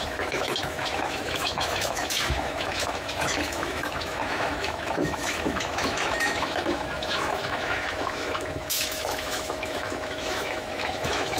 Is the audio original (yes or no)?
no